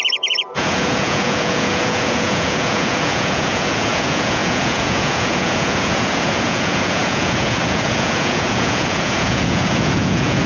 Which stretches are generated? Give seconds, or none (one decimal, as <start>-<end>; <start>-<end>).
0.0-10.5